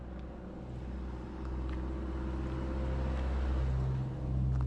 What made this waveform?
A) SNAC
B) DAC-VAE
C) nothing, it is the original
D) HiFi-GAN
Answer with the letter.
C